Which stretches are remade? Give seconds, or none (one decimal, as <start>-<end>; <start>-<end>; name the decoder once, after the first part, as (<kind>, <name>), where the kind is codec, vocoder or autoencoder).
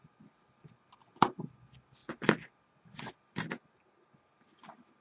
none